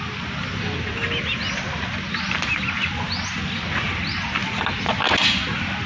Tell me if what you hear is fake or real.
real